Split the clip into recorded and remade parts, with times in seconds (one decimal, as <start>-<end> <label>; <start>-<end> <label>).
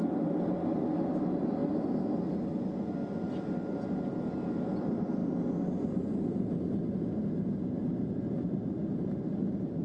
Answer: 0.0-9.8 recorded